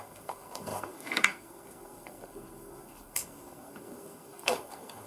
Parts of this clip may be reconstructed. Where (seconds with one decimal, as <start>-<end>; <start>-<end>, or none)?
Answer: 0.0-5.1